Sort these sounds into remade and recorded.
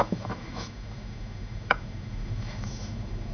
remade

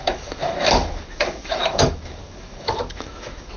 remade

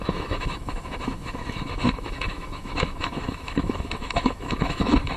remade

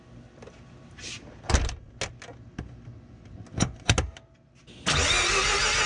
recorded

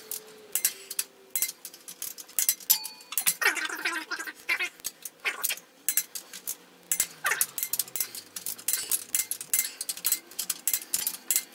recorded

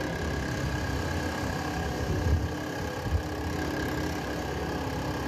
recorded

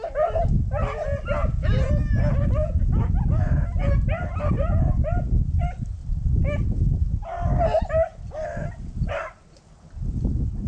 recorded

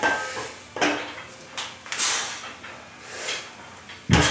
recorded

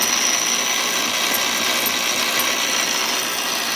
recorded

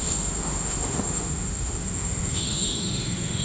remade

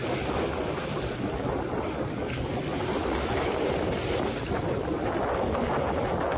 recorded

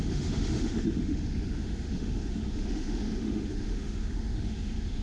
remade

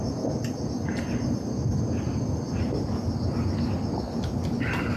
recorded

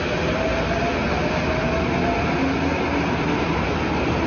recorded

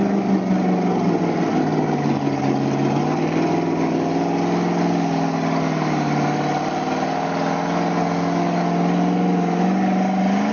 recorded